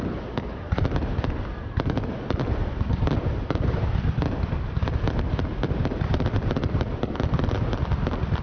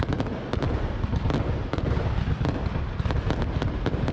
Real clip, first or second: second